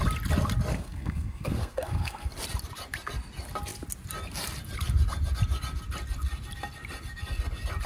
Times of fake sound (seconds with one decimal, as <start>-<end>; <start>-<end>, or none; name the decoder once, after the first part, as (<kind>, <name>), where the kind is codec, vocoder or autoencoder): 0.7-2.3 (codec, SNAC)